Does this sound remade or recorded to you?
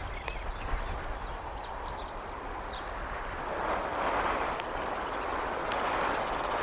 recorded